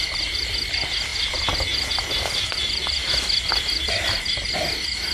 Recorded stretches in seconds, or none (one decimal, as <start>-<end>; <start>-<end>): 0.0-5.1